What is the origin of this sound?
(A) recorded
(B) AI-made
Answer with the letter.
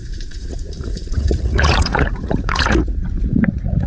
B